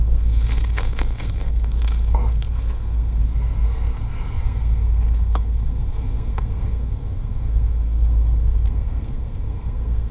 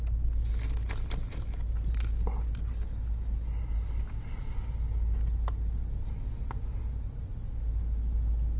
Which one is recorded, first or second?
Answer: second